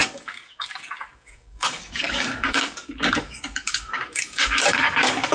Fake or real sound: fake